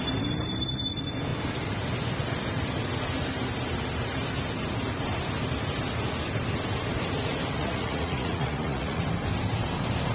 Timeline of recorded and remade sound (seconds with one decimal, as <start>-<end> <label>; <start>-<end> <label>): 0.0-7.6 recorded; 7.6-9.0 remade; 9.0-10.1 recorded